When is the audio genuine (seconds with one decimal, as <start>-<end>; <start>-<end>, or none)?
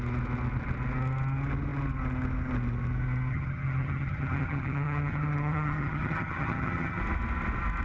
0.0-3.3; 7.0-7.8